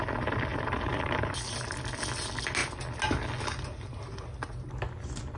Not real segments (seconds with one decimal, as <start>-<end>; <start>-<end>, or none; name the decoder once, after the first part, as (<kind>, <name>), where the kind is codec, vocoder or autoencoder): 0.5-1.3 (vocoder, BigVGAN v2)